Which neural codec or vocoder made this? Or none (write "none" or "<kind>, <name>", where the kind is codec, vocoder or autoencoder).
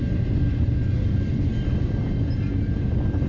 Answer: none